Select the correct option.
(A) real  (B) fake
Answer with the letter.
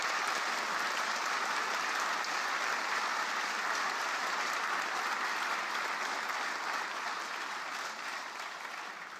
A